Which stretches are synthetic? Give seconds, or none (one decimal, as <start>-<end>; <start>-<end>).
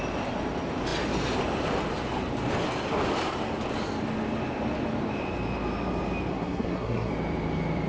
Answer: 6.3-7.1